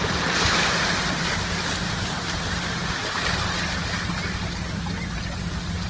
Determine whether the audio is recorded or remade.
recorded